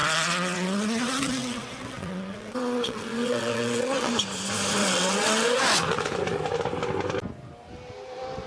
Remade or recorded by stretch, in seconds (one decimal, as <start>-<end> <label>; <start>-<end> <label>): 0.0-4.1 remade; 4.1-4.8 recorded; 4.8-5.6 remade; 5.6-8.5 recorded